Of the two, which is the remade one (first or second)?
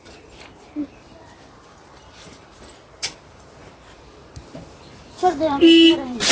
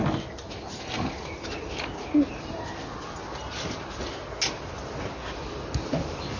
first